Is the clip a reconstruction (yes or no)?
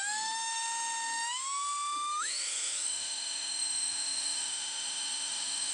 yes